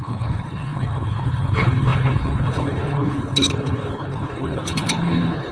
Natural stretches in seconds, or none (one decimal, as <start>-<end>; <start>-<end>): none